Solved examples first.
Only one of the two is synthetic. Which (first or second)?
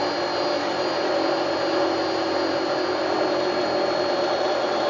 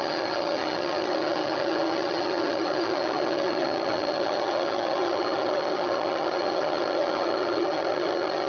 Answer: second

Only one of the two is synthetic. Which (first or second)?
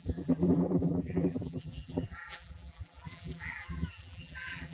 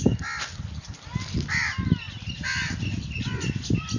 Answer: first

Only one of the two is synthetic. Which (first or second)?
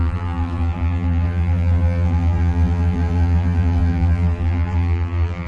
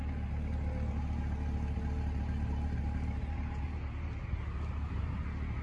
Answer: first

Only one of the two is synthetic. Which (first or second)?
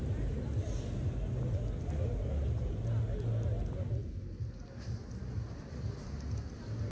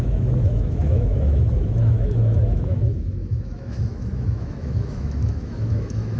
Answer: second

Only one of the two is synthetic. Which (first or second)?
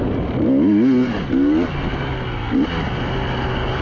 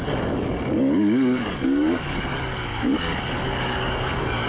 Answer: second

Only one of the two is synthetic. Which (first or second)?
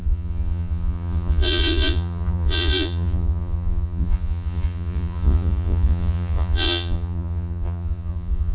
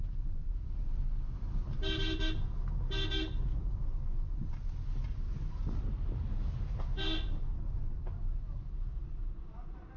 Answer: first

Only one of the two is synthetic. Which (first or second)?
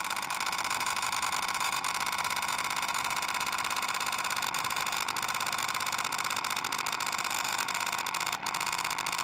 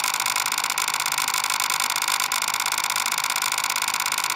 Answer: first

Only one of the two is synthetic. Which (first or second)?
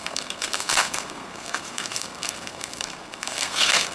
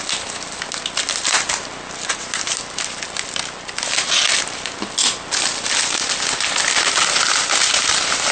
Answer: first